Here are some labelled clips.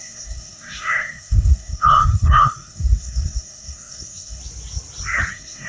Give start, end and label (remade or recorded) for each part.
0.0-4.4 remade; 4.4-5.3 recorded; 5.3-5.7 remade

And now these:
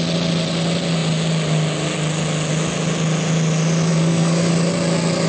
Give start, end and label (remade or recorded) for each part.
0.0-3.9 recorded; 3.9-4.5 remade; 4.5-5.3 recorded

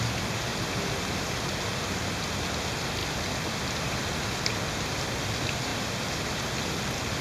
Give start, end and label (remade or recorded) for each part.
0.0-0.5 recorded; 0.5-1.6 remade; 1.6-5.7 recorded; 5.7-6.7 remade; 6.7-7.2 recorded

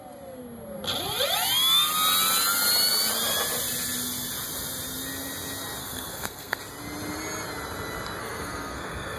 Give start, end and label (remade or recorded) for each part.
0.0-5.8 recorded; 5.8-6.6 remade; 6.6-8.2 recorded; 8.2-9.2 remade

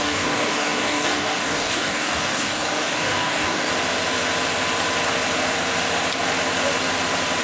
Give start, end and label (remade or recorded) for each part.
0.0-3.7 remade; 3.7-7.4 recorded

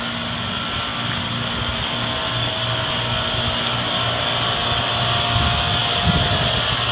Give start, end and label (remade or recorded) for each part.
0.0-6.9 recorded

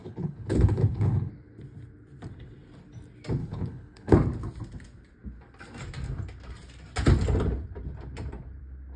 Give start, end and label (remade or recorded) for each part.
0.0-1.3 remade; 1.3-3.4 recorded; 3.4-4.1 remade; 4.1-9.0 recorded